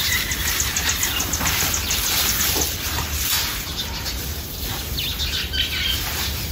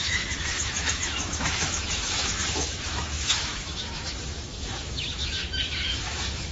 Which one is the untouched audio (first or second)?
first